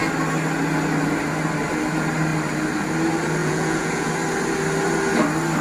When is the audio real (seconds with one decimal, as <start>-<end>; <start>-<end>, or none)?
0.0-3.4; 4.1-5.6